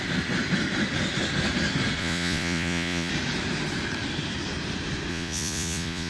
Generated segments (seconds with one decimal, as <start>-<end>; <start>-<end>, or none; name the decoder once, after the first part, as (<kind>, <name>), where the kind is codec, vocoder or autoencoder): 2.0-3.1 (vocoder, Vocos); 5.1-6.1